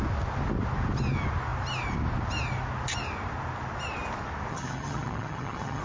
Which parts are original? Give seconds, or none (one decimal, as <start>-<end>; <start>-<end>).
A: 0.0-4.5